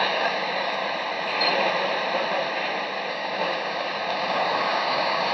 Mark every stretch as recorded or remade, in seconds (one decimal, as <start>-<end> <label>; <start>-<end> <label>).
0.0-0.8 remade; 0.8-3.1 recorded; 3.1-5.3 remade

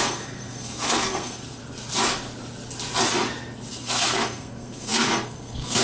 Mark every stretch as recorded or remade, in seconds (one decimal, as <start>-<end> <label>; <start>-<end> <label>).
0.0-1.6 remade; 1.6-3.7 recorded; 3.7-5.8 remade

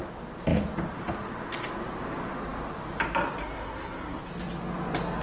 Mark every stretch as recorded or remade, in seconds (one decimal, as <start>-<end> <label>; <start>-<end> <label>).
0.0-3.4 recorded; 3.4-4.2 remade; 4.2-5.2 recorded

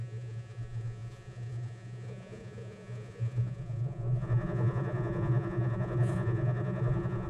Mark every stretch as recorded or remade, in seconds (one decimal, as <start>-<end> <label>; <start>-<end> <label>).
0.0-7.3 remade